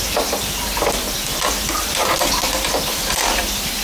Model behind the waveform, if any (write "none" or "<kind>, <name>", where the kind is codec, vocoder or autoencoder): none